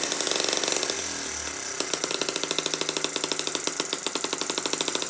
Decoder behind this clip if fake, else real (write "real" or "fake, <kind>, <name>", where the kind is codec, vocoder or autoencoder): real